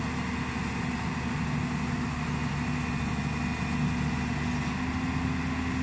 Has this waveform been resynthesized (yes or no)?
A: no